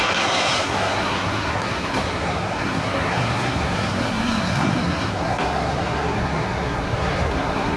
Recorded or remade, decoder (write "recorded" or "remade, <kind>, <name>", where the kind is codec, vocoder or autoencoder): remade, codec, SNAC